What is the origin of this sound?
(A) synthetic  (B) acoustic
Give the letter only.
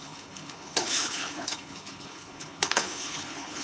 A